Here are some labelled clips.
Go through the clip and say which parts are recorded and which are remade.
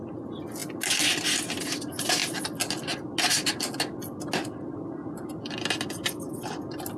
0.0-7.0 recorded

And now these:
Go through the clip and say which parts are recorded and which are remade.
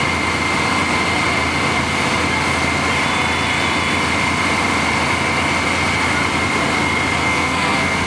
0.0-7.2 recorded; 7.2-8.1 remade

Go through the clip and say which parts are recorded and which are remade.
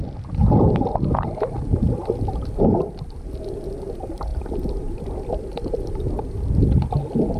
0.0-7.4 recorded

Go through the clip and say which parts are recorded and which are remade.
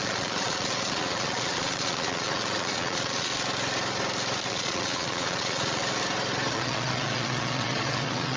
0.0-3.3 remade; 3.3-4.5 recorded; 4.5-5.8 remade; 5.8-6.5 recorded; 6.5-8.4 remade